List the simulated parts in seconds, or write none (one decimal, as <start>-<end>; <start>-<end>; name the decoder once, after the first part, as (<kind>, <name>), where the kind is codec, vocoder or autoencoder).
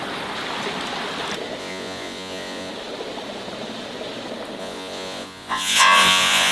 1.6-2.7 (vocoder, Vocos); 4.6-6.5